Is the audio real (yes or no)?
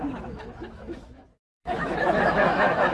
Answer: no